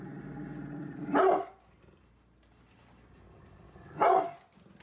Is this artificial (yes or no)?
no